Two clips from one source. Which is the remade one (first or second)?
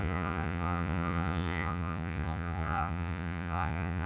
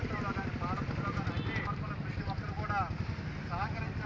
first